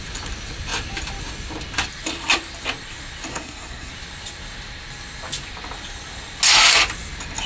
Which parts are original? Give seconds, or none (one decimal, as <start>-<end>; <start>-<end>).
0.0-3.3; 3.9-7.5

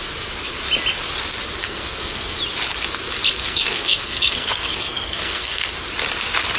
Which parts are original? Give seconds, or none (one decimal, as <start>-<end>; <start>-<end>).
0.0-1.6; 2.4-3.4; 5.7-6.6

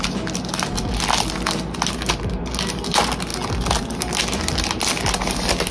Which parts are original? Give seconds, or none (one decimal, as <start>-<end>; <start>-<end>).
0.0-5.7

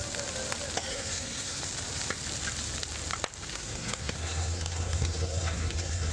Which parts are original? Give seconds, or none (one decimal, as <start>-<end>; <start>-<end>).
0.0-0.9; 1.6-3.5

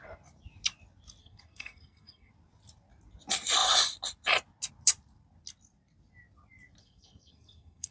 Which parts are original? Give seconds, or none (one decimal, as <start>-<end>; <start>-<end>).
0.0-1.2; 2.3-6.8

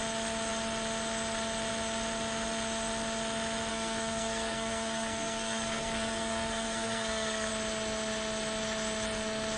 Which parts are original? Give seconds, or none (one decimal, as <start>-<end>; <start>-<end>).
0.0-3.7; 7.5-9.6